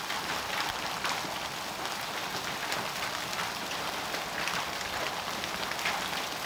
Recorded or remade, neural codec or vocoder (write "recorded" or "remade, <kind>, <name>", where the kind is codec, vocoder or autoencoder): recorded